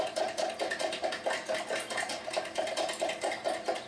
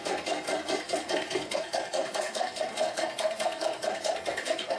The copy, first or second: second